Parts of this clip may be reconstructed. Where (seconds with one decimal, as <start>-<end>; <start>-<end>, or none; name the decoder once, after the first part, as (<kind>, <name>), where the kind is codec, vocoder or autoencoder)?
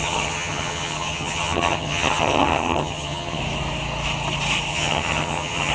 0.0-3.4 (vocoder, HiFi-GAN); 4.7-5.7